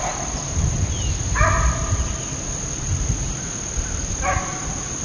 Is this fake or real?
real